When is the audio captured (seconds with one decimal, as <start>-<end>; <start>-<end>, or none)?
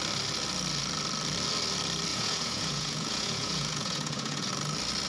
0.0-2.1; 4.5-5.1